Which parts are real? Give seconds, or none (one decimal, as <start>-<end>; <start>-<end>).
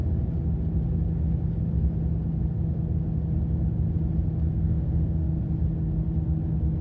0.0-4.5; 5.4-6.8